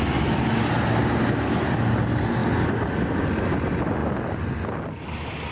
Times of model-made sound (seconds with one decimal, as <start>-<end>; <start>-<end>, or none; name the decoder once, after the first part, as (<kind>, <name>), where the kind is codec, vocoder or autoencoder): none